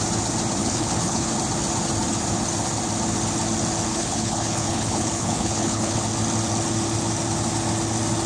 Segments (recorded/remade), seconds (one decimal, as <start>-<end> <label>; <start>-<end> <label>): 0.0-0.6 recorded; 0.6-1.3 remade; 1.3-3.9 recorded; 3.9-6.0 remade; 6.0-8.3 recorded